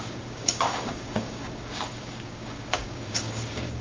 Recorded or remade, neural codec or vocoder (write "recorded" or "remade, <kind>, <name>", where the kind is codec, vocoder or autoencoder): remade, codec, DAC